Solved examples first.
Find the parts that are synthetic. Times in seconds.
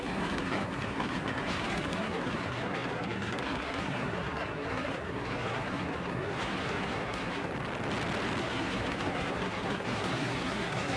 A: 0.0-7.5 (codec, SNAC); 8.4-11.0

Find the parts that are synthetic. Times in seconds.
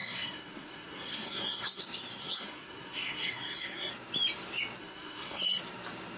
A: 0.0-1.8 (codec, SNAC); 2.2-3.9; 4.8-5.6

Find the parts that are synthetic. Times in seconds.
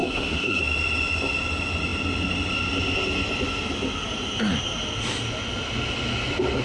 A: 0.0-0.6 (codec, SNAC)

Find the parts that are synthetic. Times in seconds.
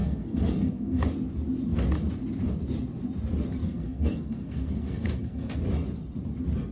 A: 0.0-1.0 (codec, SNAC); 3.6-5.6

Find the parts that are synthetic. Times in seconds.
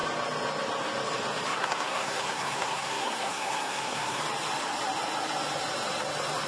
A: 1.5-4.2 (codec, SNAC)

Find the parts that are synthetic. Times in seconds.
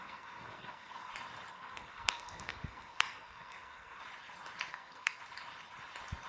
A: 0.0-1.1 (codec, SNAC); 1.5-4.0; 4.7-5.2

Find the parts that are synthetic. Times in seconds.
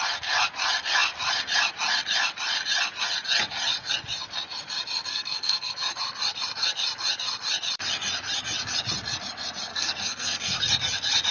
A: 5.1-5.7 (codec, SNAC); 9.7-10.6